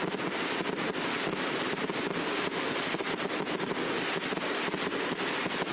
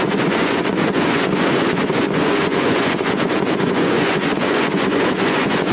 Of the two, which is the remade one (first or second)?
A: second